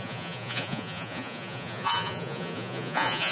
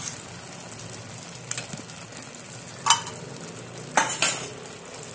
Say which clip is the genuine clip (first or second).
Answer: second